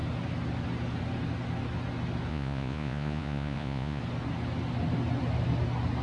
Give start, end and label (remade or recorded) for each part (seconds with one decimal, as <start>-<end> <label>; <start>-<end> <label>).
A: 0.0-2.3 recorded; 2.3-4.0 remade; 4.0-6.0 recorded